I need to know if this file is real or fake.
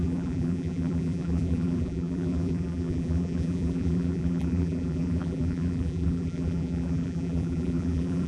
fake